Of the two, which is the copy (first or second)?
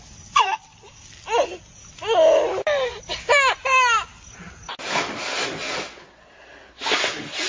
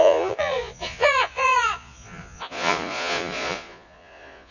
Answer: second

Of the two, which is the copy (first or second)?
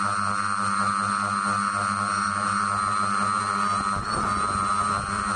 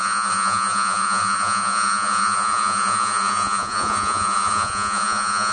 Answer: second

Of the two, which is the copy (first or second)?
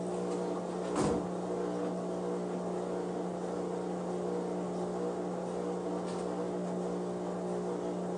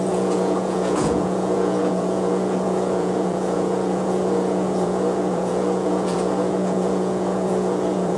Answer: second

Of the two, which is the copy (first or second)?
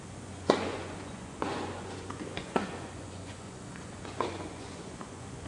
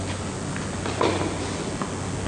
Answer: first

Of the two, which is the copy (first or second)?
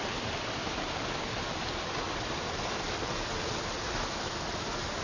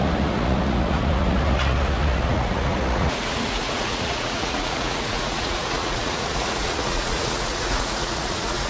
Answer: second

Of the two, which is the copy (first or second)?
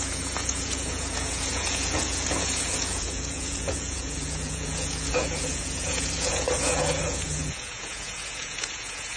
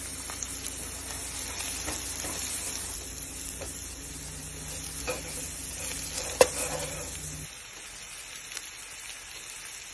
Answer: first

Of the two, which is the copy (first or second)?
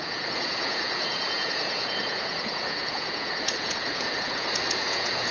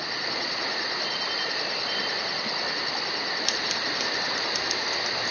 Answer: first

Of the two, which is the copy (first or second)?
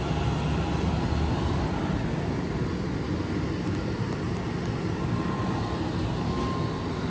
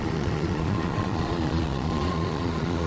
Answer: second